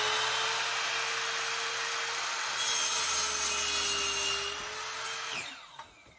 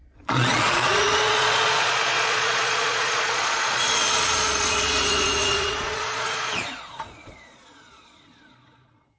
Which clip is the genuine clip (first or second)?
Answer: first